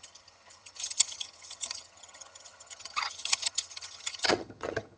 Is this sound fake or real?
fake